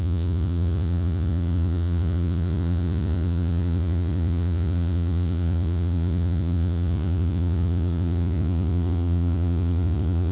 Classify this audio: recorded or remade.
remade